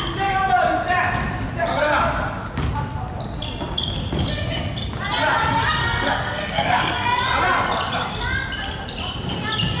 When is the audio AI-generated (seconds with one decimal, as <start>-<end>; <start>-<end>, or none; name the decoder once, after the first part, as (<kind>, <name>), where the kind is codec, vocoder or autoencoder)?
5.8-7.1 (codec, SNAC)